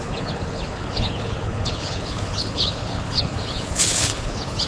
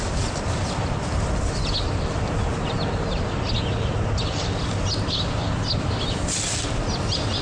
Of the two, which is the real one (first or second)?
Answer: second